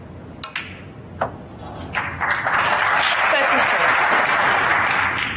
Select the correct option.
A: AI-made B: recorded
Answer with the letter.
B